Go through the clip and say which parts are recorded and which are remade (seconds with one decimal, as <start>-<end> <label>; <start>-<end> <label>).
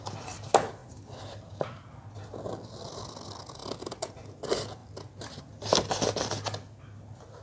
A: 0.0-7.4 recorded